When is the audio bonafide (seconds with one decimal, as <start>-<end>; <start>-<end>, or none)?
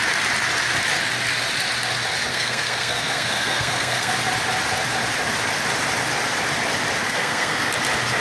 0.0-2.3; 4.1-7.0; 7.7-8.2